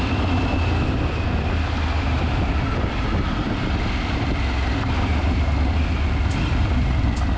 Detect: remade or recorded remade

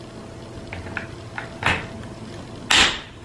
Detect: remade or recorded recorded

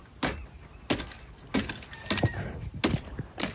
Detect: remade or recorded recorded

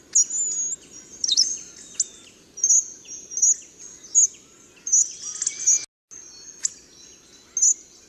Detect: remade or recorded recorded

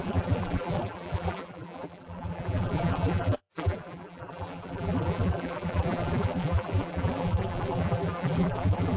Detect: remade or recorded remade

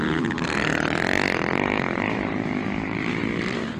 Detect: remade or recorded remade